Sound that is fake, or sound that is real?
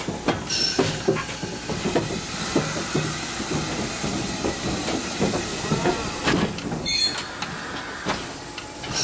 real